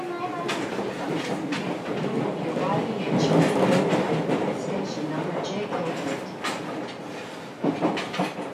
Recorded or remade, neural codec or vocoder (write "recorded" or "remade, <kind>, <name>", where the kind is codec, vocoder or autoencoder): recorded